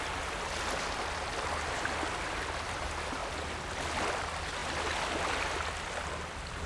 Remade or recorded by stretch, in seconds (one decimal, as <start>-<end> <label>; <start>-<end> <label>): 0.0-6.7 recorded